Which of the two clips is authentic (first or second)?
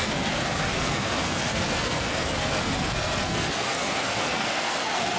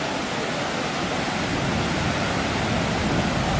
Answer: second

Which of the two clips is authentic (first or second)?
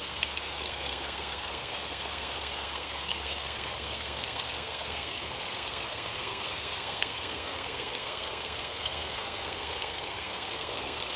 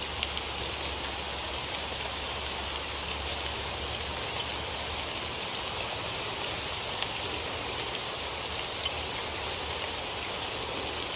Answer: second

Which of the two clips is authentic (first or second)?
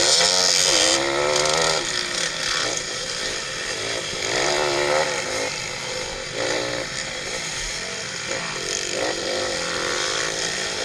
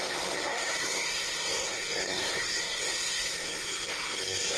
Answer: first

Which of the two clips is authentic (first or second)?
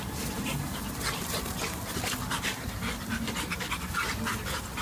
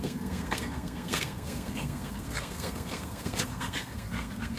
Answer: first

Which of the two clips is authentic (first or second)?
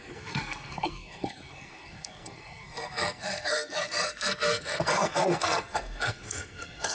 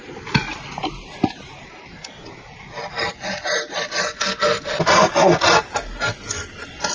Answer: second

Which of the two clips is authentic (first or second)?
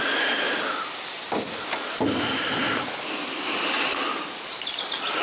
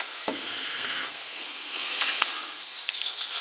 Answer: first